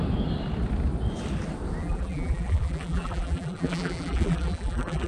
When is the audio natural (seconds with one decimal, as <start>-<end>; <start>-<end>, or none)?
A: 0.0-1.8